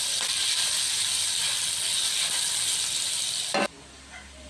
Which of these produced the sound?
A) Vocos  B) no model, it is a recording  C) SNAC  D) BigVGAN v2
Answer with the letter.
B